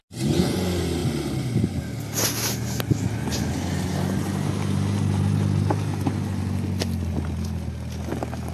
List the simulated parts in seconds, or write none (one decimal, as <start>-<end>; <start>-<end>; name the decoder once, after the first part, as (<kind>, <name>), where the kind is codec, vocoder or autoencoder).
none